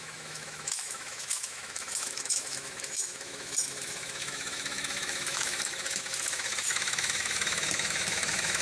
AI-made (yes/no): yes